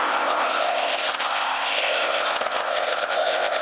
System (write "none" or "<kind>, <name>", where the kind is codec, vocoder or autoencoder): codec, ZipCodec